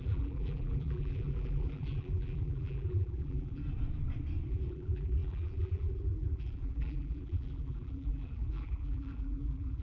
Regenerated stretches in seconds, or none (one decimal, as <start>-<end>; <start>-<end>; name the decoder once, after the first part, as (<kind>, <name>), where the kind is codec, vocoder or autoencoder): 0.0-3.6 (vocoder, BigVGAN v2); 4.5-9.8